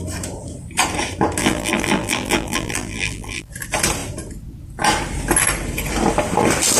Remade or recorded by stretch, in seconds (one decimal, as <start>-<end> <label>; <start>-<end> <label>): 0.0-1.4 recorded; 1.4-3.5 remade; 3.5-6.8 recorded

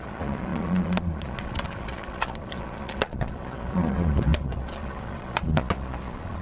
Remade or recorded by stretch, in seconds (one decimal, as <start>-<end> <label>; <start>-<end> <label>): 0.0-6.4 remade

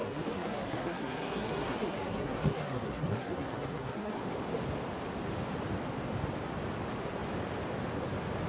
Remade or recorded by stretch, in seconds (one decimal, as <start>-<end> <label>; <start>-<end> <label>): 0.0-4.2 remade; 4.2-8.5 recorded

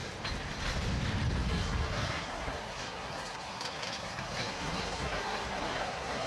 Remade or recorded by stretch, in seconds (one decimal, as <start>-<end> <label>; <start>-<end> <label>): 0.0-1.5 recorded; 1.5-6.3 remade

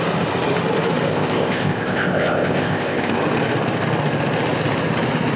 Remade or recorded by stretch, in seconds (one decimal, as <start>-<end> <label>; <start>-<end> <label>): 0.0-1.1 recorded; 1.1-3.2 remade; 3.2-5.4 recorded

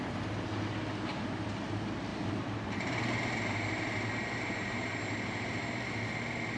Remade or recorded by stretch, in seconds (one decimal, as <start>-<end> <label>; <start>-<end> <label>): 0.0-1.1 recorded; 1.1-1.7 remade; 1.7-2.1 recorded; 2.1-6.1 remade; 6.1-6.6 recorded

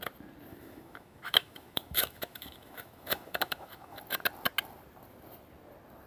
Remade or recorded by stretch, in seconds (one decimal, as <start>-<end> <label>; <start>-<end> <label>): 0.0-0.5 recorded; 0.5-4.0 remade; 4.0-6.1 recorded

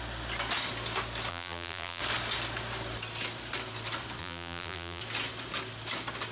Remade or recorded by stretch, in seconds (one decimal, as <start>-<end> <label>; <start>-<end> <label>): 0.0-1.3 recorded; 1.3-2.0 remade; 2.0-4.2 recorded; 4.2-5.0 remade; 5.0-6.3 recorded